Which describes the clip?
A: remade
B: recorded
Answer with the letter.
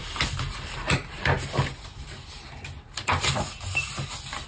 B